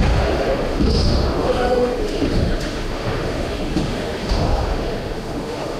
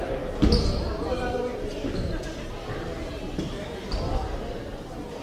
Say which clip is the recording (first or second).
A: second